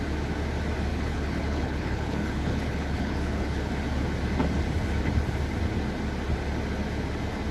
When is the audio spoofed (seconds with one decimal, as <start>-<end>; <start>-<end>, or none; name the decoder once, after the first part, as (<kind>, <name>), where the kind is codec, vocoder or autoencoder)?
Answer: 0.9-3.7 (codec, HILCodec)